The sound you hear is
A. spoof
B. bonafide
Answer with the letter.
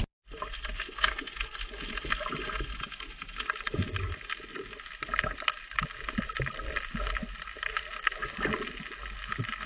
B